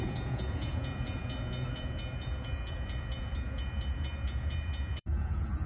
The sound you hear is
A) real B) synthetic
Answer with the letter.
B